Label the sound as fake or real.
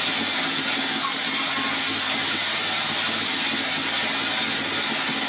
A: real